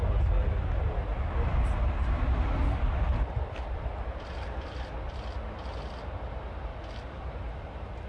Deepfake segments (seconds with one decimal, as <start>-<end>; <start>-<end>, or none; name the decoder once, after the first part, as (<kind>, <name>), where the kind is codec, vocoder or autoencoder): 3.1-5.1 (vocoder, BigVGAN v2)